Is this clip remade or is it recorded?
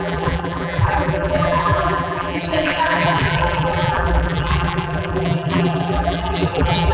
remade